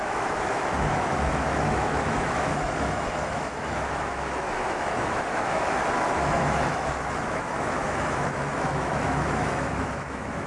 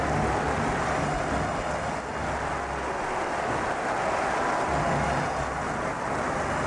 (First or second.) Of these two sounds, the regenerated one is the first